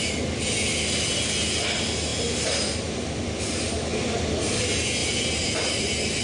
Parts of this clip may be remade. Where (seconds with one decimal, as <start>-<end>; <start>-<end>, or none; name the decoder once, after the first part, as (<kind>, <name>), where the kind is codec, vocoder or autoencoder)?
none